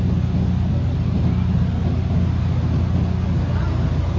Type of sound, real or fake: real